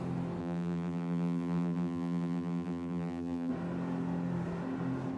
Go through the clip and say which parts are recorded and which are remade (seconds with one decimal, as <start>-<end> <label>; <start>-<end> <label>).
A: 0.0-0.4 recorded; 0.4-3.5 remade; 3.5-5.2 recorded